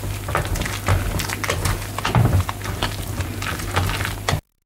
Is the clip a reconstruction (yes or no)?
no